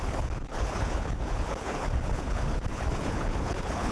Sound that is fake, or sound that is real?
fake